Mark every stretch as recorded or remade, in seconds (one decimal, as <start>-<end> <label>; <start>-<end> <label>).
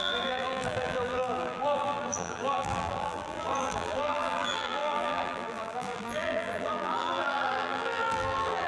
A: 0.0-8.7 remade